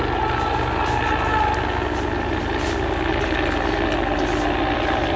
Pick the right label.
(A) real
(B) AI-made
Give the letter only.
A